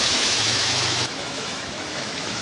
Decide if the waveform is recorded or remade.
remade